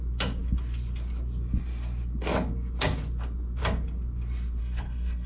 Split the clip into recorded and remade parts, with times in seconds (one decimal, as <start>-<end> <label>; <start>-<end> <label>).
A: 0.0-4.6 recorded; 4.6-5.3 remade